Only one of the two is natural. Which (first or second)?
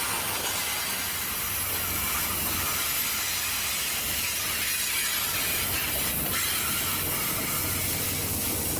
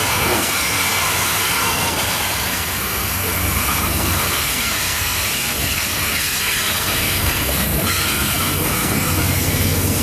first